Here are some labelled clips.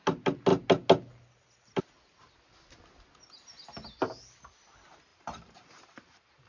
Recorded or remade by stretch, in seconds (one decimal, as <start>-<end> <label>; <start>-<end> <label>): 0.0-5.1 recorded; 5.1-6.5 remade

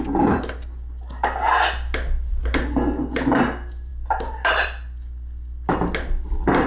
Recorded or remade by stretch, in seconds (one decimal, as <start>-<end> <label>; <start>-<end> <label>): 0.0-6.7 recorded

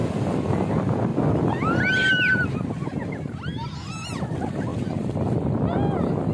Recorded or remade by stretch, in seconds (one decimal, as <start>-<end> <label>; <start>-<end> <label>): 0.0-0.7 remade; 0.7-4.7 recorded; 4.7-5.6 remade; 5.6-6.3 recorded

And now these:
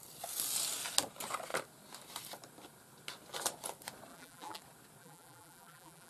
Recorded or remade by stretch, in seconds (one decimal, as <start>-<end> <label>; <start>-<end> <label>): 0.0-4.1 recorded; 4.1-4.6 remade; 4.6-5.0 recorded; 5.0-6.1 remade